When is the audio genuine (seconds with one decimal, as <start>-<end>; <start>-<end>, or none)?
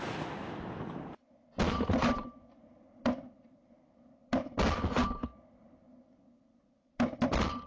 0.0-7.7